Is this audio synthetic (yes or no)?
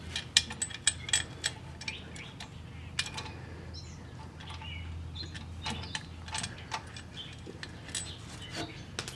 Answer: no